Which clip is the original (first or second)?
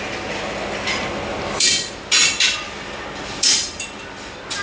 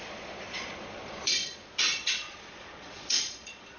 first